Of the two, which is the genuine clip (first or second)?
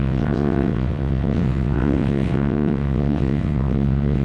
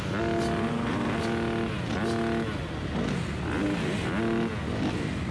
second